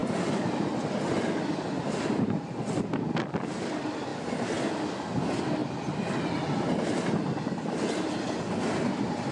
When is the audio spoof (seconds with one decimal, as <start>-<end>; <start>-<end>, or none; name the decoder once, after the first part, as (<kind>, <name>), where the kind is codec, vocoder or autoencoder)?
none